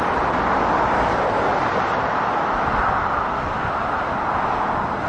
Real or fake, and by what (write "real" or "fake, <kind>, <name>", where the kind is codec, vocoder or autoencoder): real